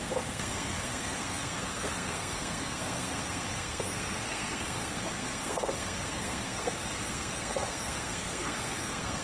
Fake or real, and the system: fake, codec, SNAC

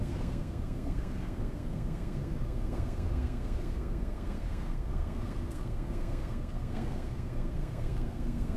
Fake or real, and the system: fake, codec, SNAC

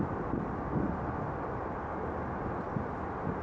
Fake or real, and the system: real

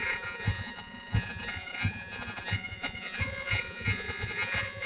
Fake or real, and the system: fake, vocoder, Vocos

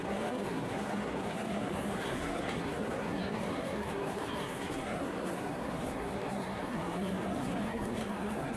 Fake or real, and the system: fake, codec, SNAC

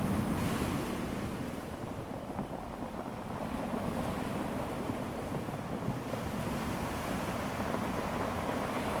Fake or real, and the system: real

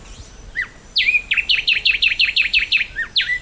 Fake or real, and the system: real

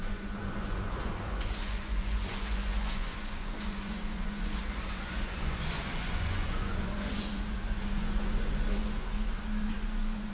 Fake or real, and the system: fake, vocoder, Vocos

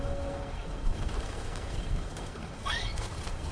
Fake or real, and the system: fake, codec, SNAC